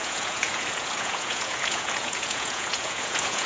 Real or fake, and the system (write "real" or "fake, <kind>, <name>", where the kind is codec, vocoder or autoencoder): fake, vocoder, Vocos